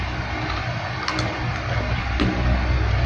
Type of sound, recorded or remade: recorded